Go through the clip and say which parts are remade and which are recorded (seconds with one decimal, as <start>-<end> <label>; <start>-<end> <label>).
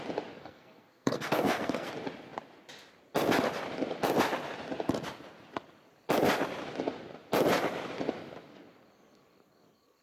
0.0-0.4 recorded; 0.4-1.9 remade; 1.9-10.0 recorded